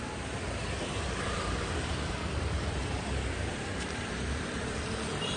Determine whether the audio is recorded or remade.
remade